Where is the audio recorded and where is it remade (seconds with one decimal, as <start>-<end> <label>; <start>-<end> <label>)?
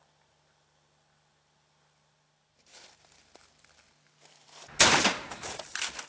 0.0-6.1 recorded